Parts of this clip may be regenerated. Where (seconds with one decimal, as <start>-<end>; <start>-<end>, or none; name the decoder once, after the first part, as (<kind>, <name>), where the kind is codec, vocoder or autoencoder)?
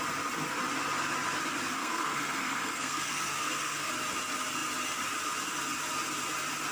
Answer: 1.8-3.9 (codec, SNAC)